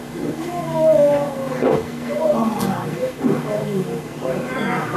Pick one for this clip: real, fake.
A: fake